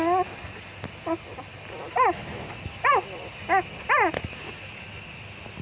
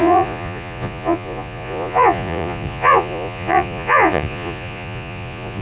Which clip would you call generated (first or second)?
second